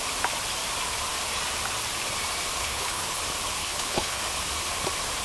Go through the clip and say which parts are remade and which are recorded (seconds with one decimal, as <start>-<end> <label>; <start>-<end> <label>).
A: 0.0-2.6 recorded; 2.6-3.2 remade; 3.2-3.6 recorded; 3.6-4.2 remade; 4.2-5.2 recorded